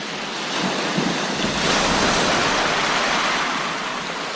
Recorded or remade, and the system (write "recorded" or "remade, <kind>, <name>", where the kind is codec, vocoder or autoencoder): recorded